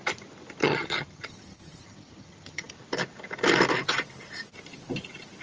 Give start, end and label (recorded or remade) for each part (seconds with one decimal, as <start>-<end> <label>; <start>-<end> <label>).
0.0-0.6 recorded; 0.6-2.7 remade; 2.7-5.4 recorded